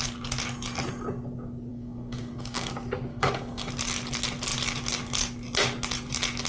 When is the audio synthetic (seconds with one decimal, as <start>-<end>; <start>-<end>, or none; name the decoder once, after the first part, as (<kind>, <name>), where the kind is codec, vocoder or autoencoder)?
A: 1.7-2.7 (codec, DAC); 3.1-3.7